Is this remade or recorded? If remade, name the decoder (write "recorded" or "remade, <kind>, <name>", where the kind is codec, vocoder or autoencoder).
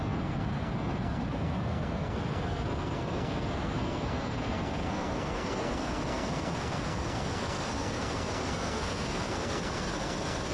remade, codec, SNAC